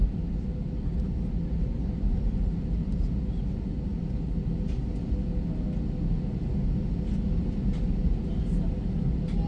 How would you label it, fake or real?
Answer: real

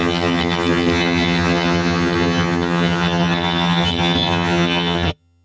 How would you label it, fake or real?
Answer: fake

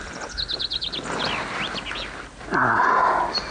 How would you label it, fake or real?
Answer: real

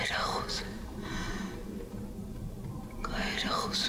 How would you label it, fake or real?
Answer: fake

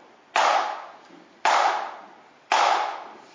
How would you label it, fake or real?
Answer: real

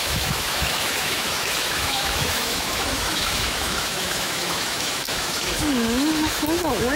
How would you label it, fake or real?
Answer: fake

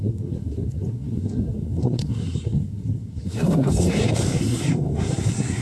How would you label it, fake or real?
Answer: fake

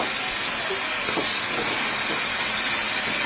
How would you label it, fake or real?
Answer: real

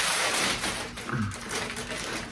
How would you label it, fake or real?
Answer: fake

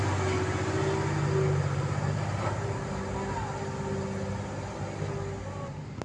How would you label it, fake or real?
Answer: real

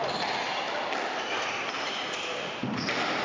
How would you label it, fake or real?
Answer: real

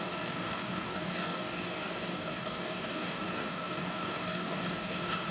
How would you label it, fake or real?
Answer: fake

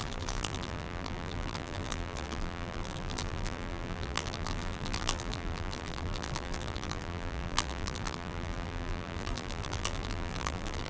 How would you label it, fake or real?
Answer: fake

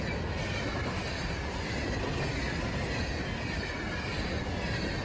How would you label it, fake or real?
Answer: real